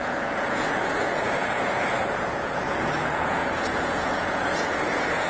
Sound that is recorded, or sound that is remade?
remade